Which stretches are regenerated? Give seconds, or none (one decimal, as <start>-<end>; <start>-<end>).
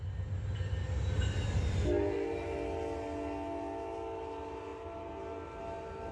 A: none